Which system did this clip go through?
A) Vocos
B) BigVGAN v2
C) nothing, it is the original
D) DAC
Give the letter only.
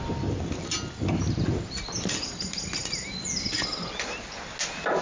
C